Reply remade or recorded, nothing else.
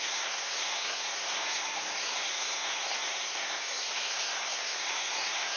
remade